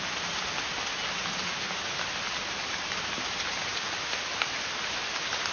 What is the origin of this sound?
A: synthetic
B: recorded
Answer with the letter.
B